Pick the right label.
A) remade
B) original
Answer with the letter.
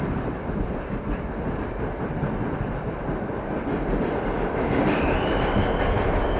B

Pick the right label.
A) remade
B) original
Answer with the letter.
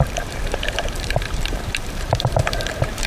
A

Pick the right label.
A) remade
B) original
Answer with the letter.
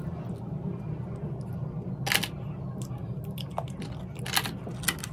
B